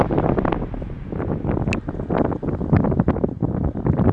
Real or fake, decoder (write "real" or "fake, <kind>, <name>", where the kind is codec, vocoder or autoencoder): real